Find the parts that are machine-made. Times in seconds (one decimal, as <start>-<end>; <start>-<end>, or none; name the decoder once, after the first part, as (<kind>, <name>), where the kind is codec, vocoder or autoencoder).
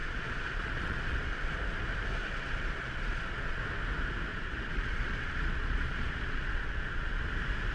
0.0-1.5 (vocoder, Vocos); 2.2-3.6; 4.3-7.3